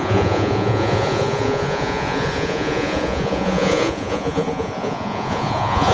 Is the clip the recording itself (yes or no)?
no